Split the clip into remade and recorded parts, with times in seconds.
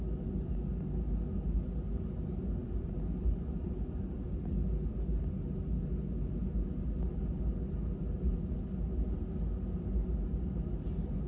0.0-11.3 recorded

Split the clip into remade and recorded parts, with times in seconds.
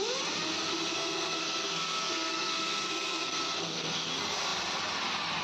0.0-0.9 recorded; 0.9-4.1 remade; 4.1-5.4 recorded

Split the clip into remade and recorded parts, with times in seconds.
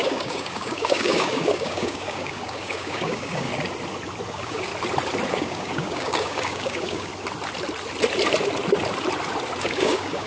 0.0-3.5 remade; 3.5-4.3 recorded; 4.3-4.7 remade; 4.7-5.3 recorded; 5.3-7.1 remade; 7.1-9.6 recorded; 9.6-10.3 remade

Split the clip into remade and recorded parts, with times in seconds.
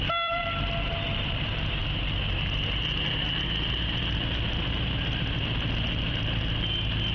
0.0-1.8 remade; 1.8-6.1 recorded; 6.1-7.1 remade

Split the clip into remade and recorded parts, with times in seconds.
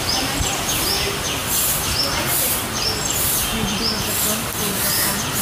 0.0-5.4 recorded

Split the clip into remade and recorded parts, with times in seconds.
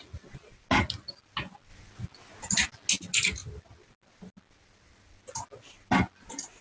0.0-6.6 recorded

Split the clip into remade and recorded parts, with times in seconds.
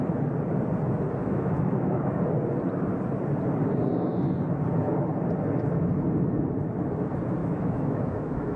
0.0-1.2 recorded; 1.2-2.2 remade; 2.2-7.4 recorded; 7.4-8.6 remade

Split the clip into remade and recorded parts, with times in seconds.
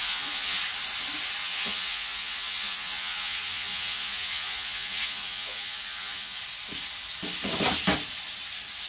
0.0-0.6 remade; 0.6-1.4 recorded; 1.4-6.4 remade; 6.4-8.9 recorded